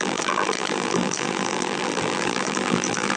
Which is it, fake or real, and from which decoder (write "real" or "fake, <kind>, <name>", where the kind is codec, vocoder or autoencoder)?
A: fake, vocoder, BigVGAN v2